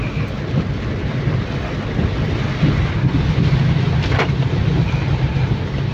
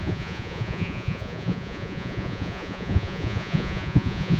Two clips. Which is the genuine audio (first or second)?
first